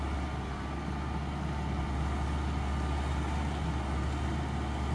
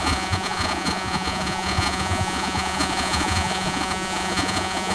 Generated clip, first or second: second